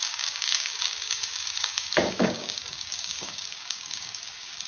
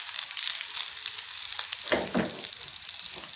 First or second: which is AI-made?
first